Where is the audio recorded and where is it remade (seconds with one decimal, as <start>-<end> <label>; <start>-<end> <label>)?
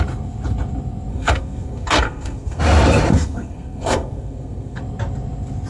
0.0-1.1 recorded; 1.1-2.6 remade; 2.6-3.1 recorded; 3.1-4.8 remade; 4.8-5.7 recorded